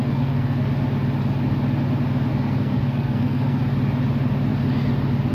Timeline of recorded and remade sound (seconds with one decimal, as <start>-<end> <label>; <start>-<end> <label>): 0.0-0.7 remade; 0.7-2.3 recorded; 2.3-3.6 remade; 3.6-5.3 recorded